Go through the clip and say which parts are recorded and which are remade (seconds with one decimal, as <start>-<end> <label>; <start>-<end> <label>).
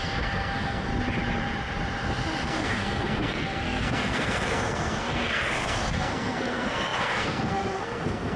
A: 0.0-0.9 remade; 0.9-2.4 recorded; 2.4-8.4 remade